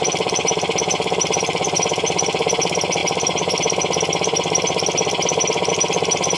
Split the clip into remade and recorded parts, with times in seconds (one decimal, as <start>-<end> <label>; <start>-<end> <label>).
0.0-3.0 remade; 3.0-5.7 recorded; 5.7-6.4 remade